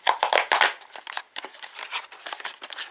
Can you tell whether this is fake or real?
real